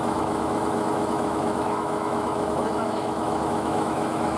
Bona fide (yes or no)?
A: no